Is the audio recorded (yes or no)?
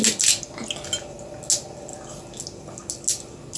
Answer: yes